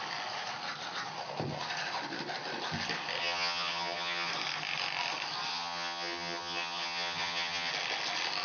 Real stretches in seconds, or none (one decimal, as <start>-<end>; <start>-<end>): 0.0-3.2; 4.3-5.5; 7.7-8.4